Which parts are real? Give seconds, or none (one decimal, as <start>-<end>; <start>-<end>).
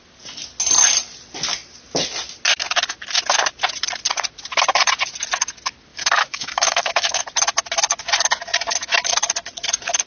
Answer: 0.0-5.9; 7.2-10.1